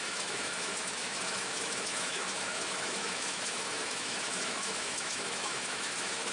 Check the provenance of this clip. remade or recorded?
remade